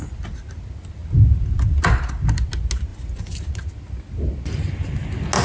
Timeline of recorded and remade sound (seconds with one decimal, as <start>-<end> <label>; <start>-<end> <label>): 0.0-5.4 recorded